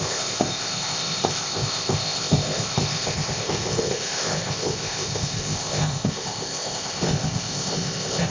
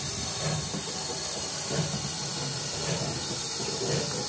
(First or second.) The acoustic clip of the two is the second